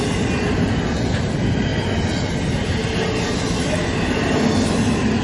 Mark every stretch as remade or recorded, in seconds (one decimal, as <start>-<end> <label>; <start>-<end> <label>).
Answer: 0.0-5.2 recorded